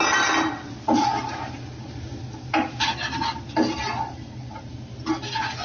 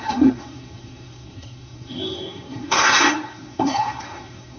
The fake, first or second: second